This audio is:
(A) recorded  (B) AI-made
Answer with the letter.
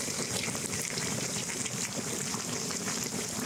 B